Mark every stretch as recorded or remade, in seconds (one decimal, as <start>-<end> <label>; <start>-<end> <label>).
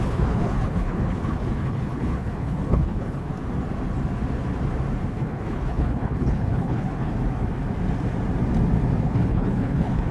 0.0-3.3 remade; 3.3-5.1 recorded; 5.1-7.1 remade; 7.1-9.0 recorded; 9.0-10.1 remade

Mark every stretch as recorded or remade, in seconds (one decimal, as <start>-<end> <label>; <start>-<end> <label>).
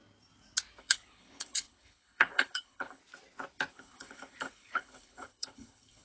0.0-0.8 recorded; 0.8-3.0 remade; 3.0-3.7 recorded; 3.7-6.0 remade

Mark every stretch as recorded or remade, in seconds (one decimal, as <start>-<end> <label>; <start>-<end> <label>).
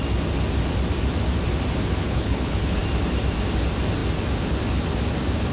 0.0-2.0 recorded; 2.0-2.8 remade; 2.8-5.5 recorded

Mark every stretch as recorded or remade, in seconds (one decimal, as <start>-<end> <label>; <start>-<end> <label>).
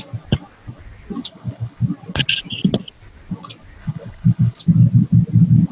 0.0-1.2 recorded; 1.2-1.8 remade; 1.8-3.8 recorded; 3.8-4.6 remade; 4.6-5.7 recorded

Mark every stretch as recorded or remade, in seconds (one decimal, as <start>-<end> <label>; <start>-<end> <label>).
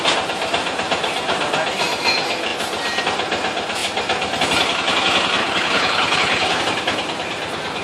0.0-5.4 recorded; 5.4-6.6 remade; 6.6-7.8 recorded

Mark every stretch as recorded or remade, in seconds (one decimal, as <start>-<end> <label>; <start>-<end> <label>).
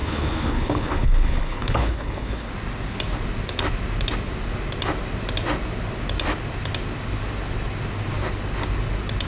0.0-2.5 remade; 2.5-9.3 recorded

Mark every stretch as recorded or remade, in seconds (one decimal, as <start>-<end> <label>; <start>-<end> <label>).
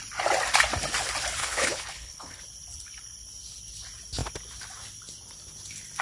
0.0-1.4 recorded; 1.4-2.4 remade; 2.4-6.0 recorded